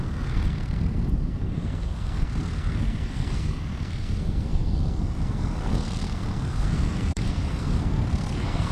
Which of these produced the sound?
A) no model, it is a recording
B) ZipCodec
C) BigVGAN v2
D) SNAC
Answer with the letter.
D